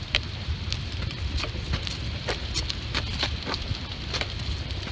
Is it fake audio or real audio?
real